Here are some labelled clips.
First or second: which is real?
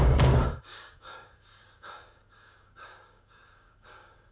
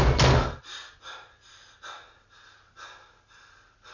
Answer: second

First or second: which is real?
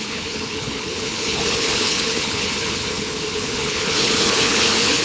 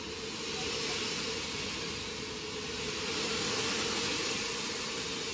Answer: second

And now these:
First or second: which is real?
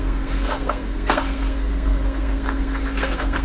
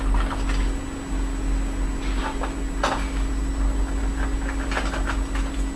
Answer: second